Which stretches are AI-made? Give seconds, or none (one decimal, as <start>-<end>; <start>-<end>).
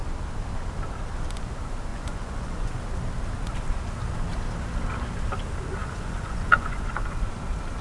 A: 1.9-2.8; 5.8-7.0